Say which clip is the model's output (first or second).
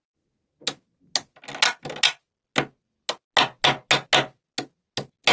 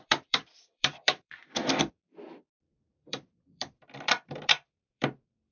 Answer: second